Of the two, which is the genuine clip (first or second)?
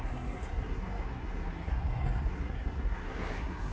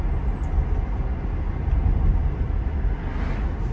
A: second